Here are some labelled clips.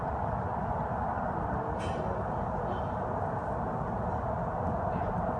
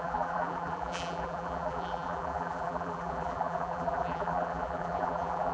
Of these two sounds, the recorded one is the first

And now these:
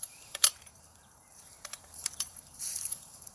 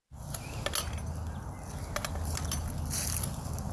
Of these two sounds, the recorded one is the second